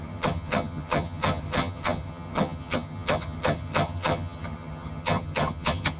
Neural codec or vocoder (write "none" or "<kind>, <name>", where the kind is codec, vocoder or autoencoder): vocoder, HiFi-GAN